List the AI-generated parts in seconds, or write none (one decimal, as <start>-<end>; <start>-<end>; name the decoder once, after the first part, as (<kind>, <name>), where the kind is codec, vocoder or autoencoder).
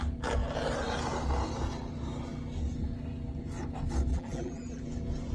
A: 4.1-4.8 (vocoder, BigVGAN v2)